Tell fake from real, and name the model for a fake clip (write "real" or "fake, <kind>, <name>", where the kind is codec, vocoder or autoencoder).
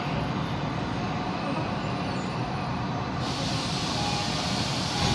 real